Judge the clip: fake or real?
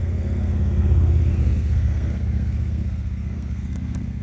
fake